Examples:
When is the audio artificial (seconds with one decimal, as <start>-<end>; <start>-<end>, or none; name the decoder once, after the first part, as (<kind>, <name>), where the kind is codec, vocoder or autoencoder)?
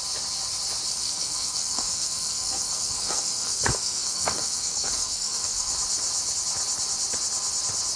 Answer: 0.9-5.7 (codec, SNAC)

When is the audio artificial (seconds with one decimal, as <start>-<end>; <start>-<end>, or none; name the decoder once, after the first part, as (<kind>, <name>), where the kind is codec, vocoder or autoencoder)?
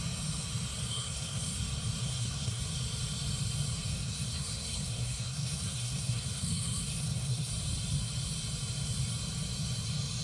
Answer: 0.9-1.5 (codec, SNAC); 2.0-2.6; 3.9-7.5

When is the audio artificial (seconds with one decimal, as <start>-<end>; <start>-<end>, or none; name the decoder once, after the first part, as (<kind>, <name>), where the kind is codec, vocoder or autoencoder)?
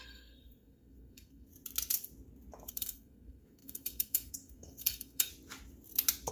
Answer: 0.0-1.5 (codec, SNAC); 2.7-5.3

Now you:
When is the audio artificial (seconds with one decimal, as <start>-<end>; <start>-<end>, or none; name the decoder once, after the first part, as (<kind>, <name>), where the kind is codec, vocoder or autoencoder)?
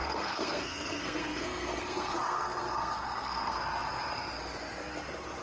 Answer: 0.0-3.6 (codec, SNAC)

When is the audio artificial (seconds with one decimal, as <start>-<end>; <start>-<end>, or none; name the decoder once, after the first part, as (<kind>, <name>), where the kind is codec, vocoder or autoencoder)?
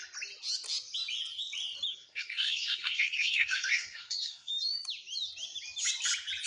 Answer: 1.9-4.5 (codec, SNAC)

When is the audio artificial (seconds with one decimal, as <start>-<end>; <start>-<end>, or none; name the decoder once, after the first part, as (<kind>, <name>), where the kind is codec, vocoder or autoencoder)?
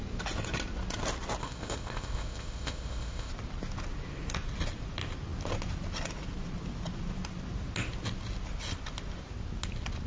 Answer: 1.4-3.3 (codec, ZipCodec)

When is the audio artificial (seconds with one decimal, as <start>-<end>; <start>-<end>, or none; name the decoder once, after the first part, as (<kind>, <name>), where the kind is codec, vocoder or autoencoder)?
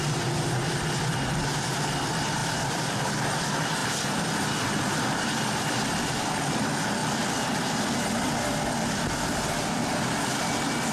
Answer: 2.4-3.4 (vocoder, BigVGAN v2); 3.8-5.4; 7.0-10.4